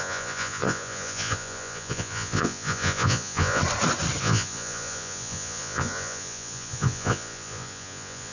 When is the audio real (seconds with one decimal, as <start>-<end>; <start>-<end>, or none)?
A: 3.6-4.2